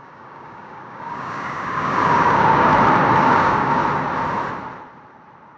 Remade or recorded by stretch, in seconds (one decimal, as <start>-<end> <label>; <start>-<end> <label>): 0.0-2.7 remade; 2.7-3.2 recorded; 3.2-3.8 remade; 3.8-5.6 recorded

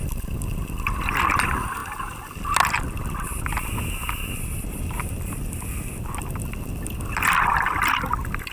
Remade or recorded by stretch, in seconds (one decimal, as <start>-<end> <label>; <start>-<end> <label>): 0.0-8.5 recorded

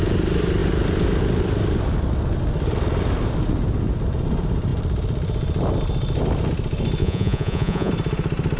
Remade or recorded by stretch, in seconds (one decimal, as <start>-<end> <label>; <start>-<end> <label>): 0.0-7.0 recorded; 7.0-7.9 remade; 7.9-8.6 recorded

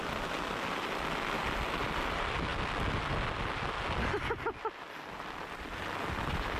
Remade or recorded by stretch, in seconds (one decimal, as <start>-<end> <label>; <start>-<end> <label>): 0.0-6.6 recorded

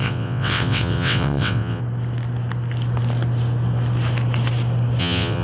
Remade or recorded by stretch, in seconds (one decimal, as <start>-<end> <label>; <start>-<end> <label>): 0.0-1.8 remade; 1.8-5.0 recorded; 5.0-5.4 remade